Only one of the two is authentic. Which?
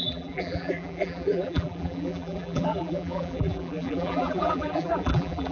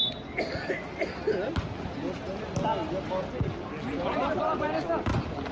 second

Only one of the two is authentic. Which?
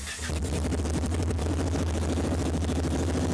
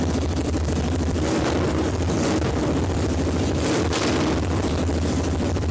first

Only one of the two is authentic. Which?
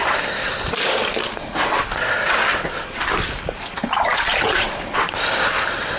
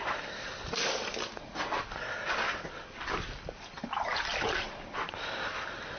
second